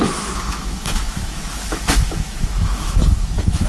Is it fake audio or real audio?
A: fake